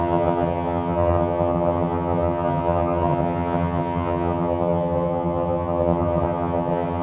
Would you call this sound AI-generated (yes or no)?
yes